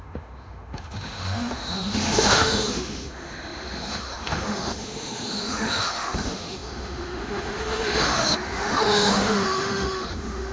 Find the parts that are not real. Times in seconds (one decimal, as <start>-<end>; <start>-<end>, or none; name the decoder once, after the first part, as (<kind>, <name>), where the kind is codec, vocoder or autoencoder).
0.0-10.5 (autoencoder, DAC-VAE)